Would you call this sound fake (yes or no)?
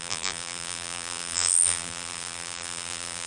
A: yes